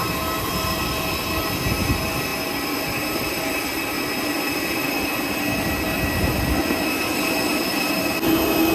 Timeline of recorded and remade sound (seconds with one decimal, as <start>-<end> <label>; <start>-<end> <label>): 0.0-8.7 recorded